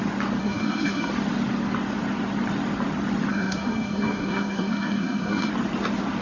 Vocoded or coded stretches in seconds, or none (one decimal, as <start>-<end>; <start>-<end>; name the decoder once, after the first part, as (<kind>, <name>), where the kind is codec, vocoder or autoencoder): 0.4-1.1 (codec, SNAC); 3.3-5.5